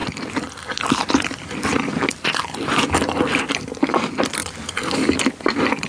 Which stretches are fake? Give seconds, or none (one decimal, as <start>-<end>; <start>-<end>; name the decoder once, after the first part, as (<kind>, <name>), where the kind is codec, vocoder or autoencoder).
0.0-3.5 (vocoder, BigVGAN v2); 4.4-5.3